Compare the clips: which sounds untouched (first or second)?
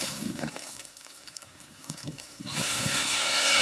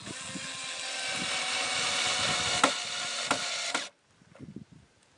second